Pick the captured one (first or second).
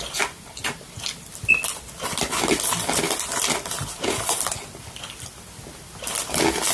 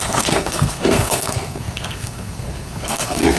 first